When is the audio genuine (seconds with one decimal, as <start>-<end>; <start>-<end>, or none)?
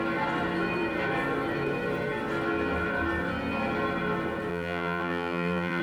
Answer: 0.0-4.5